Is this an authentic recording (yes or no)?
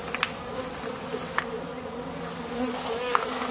yes